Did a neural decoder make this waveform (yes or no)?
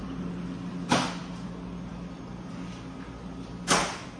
no